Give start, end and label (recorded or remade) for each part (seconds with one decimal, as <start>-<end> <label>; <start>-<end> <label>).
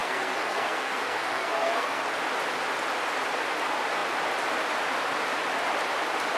0.0-2.1 remade; 2.1-6.4 recorded